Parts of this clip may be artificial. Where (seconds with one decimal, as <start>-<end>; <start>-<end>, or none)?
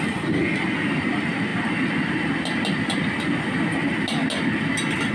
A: none